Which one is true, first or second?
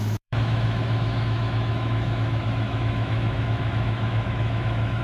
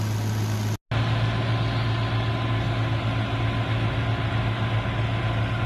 second